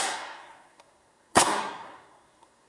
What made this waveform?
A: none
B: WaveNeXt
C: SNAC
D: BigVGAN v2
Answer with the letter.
C